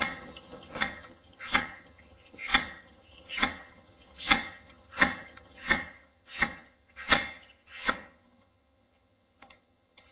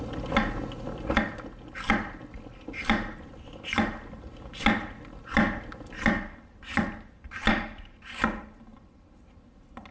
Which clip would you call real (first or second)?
second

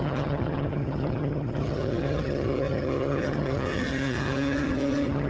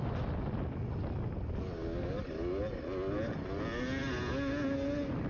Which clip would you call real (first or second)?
second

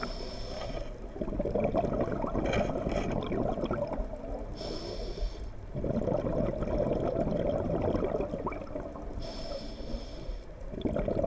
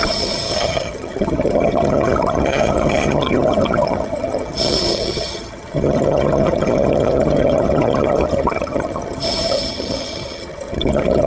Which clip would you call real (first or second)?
first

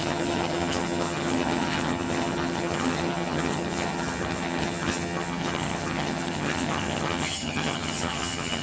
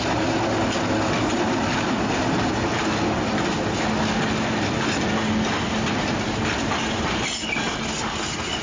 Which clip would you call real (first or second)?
second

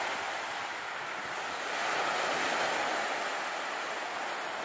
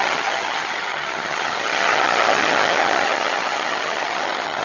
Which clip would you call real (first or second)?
first